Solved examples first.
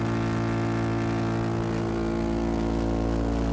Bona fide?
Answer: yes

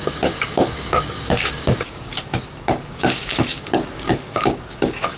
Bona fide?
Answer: no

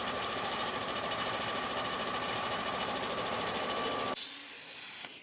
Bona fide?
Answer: no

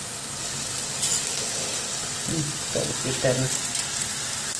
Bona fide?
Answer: yes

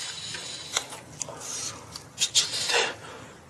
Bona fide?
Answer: yes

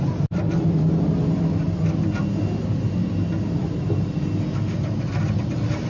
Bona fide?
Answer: yes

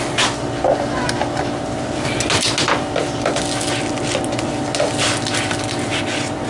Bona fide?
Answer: yes